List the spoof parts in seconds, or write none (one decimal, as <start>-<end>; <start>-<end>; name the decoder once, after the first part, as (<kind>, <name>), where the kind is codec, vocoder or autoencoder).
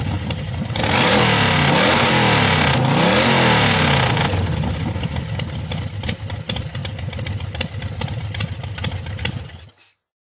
none